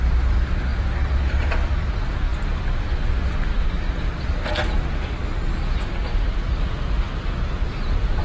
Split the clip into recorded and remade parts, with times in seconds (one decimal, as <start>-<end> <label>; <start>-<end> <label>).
0.0-3.5 recorded; 3.5-4.2 remade; 4.2-8.2 recorded